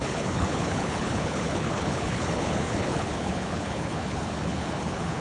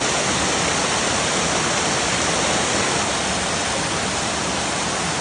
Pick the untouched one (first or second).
second